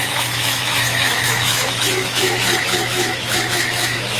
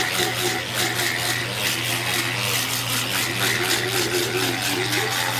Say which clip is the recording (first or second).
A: second